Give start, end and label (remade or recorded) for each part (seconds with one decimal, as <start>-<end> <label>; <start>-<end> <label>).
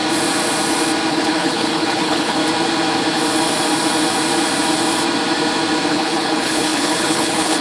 0.0-1.1 recorded; 1.1-2.4 remade; 2.4-5.9 recorded; 5.9-7.6 remade